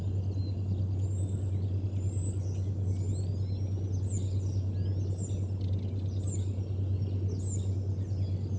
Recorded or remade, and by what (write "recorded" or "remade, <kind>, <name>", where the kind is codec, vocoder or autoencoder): recorded